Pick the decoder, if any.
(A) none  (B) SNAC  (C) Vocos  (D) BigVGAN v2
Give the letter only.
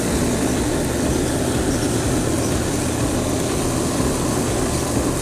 A